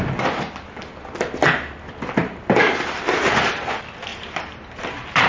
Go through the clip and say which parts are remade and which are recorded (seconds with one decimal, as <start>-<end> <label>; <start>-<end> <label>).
0.0-2.2 recorded; 2.2-3.5 remade; 3.5-4.1 recorded; 4.1-5.3 remade